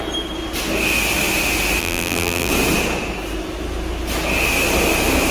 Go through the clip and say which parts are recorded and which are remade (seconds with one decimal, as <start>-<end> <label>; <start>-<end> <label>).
0.0-1.8 recorded; 1.8-2.5 remade; 2.5-5.3 recorded